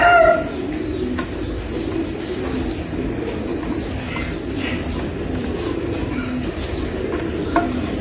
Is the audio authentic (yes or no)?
yes